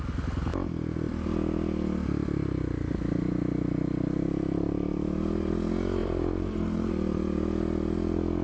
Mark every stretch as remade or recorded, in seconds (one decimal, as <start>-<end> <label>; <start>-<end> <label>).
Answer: 0.0-6.0 recorded; 6.0-6.9 remade; 6.9-8.4 recorded